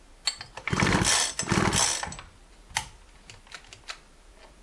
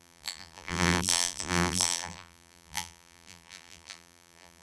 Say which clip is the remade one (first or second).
second